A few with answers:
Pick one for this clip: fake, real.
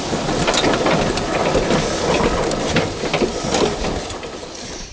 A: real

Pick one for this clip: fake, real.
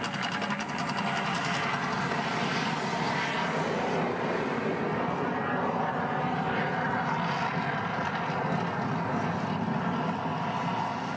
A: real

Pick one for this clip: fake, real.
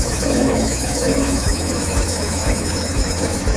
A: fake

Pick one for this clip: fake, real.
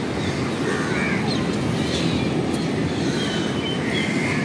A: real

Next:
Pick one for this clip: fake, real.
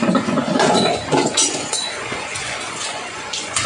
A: fake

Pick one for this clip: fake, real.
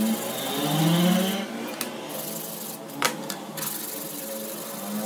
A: real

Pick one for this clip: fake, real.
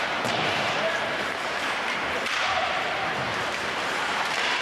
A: fake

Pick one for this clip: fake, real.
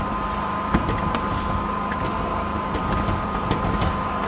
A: real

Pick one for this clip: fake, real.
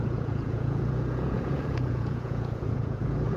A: fake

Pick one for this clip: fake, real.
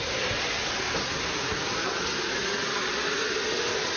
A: real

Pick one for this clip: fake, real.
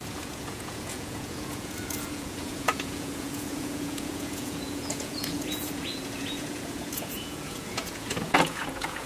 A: fake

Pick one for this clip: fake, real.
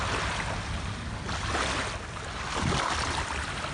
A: real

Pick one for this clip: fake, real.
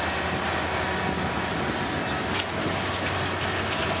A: real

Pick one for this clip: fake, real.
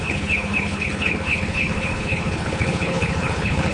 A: fake